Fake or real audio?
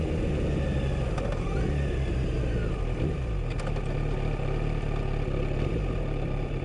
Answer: real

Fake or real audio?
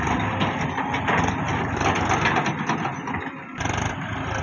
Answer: real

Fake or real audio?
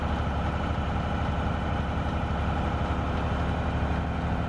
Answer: real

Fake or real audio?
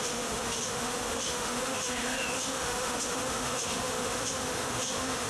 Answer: fake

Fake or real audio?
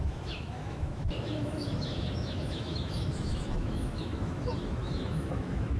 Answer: fake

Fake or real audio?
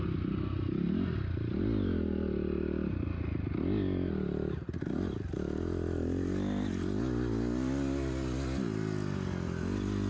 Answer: real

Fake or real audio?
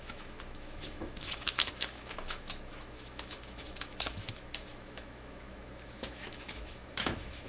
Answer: fake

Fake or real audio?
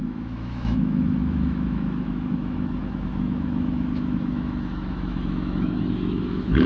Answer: fake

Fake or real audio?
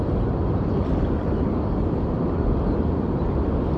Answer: real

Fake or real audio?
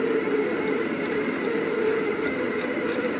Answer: real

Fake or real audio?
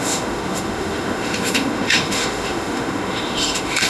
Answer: fake